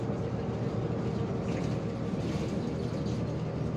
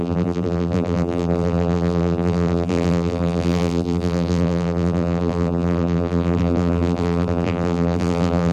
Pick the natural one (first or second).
first